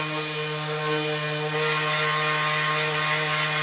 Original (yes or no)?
yes